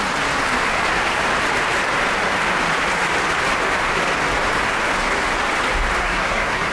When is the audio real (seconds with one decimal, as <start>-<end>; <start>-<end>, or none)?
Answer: 0.0-6.0